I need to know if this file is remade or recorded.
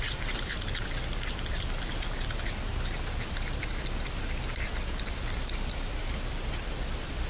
remade